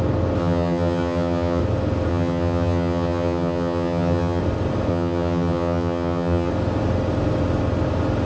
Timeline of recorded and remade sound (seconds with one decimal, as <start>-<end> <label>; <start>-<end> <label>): 0.0-0.4 recorded; 0.4-1.6 remade; 1.6-2.1 recorded; 2.1-4.4 remade; 4.4-4.9 recorded; 4.9-6.5 remade; 6.5-8.3 recorded